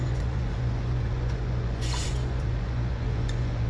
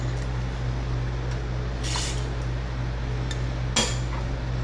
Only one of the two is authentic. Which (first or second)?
second